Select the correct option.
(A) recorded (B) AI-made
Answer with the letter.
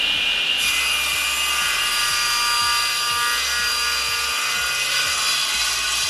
A